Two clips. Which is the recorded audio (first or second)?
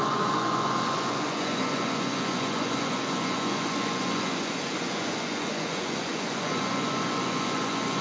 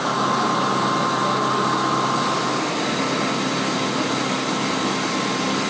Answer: second